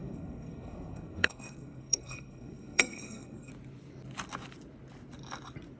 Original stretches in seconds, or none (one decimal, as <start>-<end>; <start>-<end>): 3.5-5.8